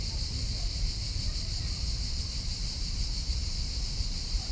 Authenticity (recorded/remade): remade